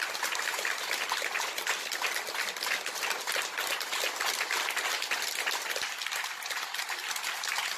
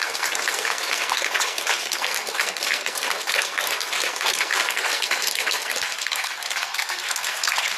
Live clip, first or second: first